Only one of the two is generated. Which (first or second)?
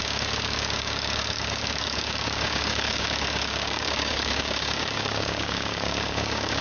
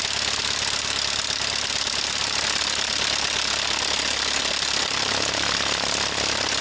first